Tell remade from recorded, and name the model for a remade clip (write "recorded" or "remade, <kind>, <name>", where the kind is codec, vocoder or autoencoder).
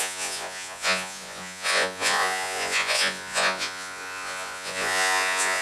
remade, vocoder, Vocos